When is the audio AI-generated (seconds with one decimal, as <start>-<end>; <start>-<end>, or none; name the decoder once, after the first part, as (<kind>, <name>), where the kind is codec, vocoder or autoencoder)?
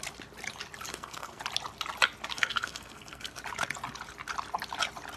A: 0.9-1.4 (codec, SNAC); 2.3-3.4